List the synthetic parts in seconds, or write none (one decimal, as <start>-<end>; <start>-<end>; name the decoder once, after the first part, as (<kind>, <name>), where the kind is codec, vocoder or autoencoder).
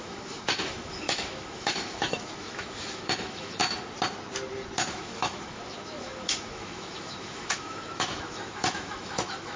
0.0-3.6 (autoencoder, DAC-VAE); 4.9-9.6